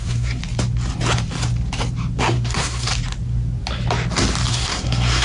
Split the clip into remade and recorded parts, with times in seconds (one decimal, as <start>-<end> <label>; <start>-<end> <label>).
0.0-0.4 remade; 0.4-2.2 recorded; 2.2-2.9 remade; 2.9-4.5 recorded; 4.5-5.2 remade